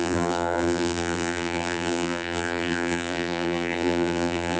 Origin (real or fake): fake